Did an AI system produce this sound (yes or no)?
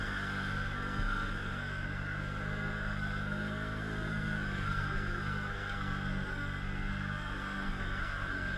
yes